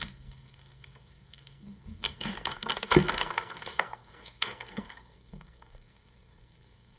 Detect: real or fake fake